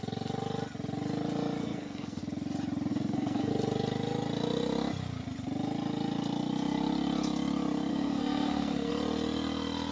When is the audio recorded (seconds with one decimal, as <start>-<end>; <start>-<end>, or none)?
0.0-1.6; 2.2-2.9; 3.5-7.9; 8.9-9.9